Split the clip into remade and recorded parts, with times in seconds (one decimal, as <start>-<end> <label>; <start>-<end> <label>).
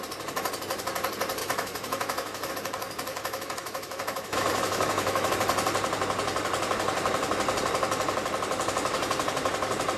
0.0-1.4 recorded; 1.4-2.5 remade; 2.5-3.1 recorded; 3.1-5.3 remade; 5.3-10.0 recorded